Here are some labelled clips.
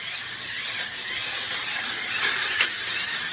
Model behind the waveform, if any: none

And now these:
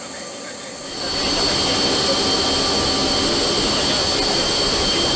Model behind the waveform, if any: none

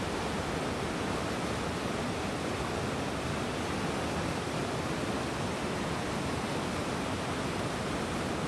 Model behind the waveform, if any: none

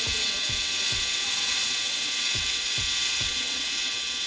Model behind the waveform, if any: vocoder, WaveNeXt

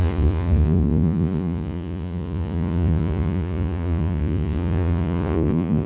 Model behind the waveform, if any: vocoder, Vocos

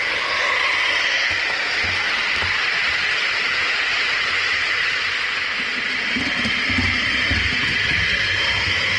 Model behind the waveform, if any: none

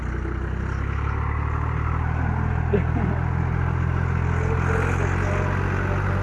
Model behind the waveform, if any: none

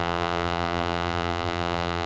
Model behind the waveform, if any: vocoder, BigVGAN v2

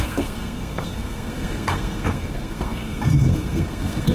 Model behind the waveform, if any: codec, SNAC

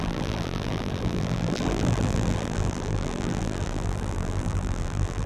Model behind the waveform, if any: vocoder, BigVGAN v2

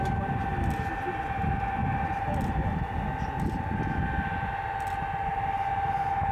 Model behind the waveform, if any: none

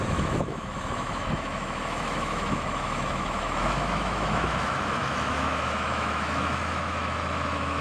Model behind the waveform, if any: autoencoder, DAC-VAE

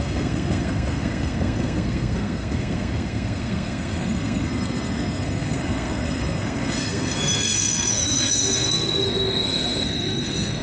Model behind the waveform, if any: codec, SNAC